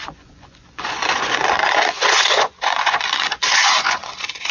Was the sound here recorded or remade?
remade